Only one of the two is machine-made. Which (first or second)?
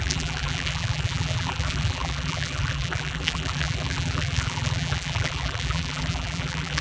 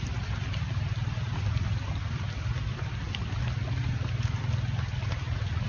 first